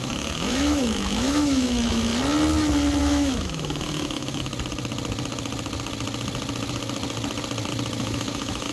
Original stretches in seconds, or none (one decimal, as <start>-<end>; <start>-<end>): 2.1-3.0; 4.5-8.0